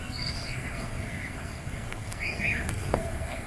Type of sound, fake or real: fake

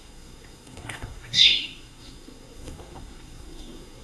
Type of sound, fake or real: fake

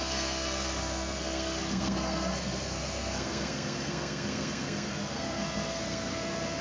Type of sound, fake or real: fake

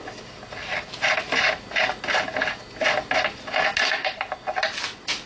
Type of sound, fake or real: real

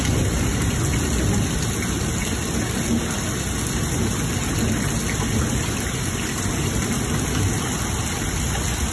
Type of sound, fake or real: real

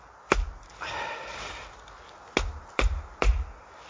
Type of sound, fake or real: real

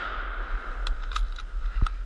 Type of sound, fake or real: real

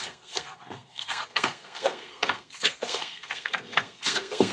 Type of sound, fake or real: fake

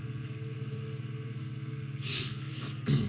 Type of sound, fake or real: fake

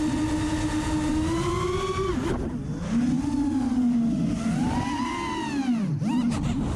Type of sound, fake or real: real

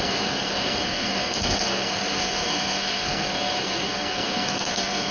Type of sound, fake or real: fake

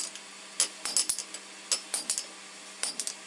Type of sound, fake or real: real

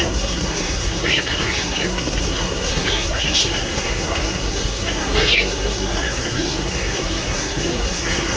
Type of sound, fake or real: fake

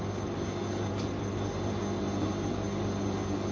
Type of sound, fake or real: real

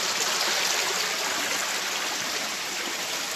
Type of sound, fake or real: real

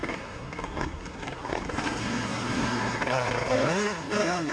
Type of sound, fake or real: fake